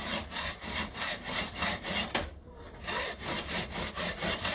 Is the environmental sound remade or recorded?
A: remade